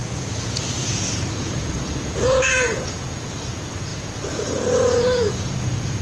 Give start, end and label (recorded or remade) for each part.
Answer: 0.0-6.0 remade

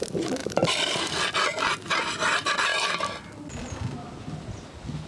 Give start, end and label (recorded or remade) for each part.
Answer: 0.0-5.1 recorded

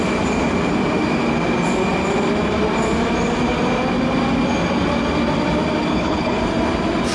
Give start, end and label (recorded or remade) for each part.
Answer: 0.0-5.9 recorded; 5.9-6.4 remade; 6.4-7.1 recorded

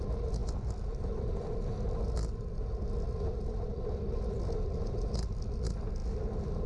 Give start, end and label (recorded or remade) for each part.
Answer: 0.0-6.7 recorded

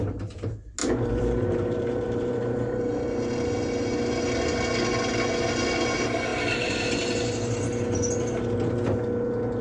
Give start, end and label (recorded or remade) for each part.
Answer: 0.0-0.8 recorded; 0.8-2.9 remade; 2.9-6.3 recorded; 6.3-7.3 remade; 7.3-9.6 recorded